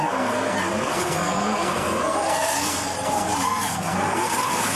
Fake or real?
fake